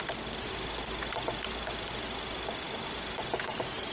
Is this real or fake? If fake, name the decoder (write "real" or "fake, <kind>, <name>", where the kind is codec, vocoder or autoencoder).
real